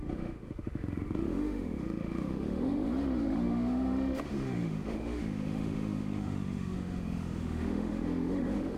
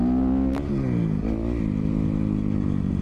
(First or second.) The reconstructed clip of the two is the first